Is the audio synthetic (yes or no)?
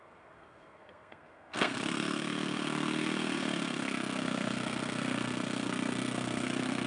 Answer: yes